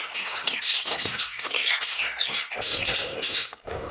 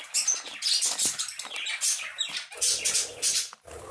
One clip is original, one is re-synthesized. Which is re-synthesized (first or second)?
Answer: first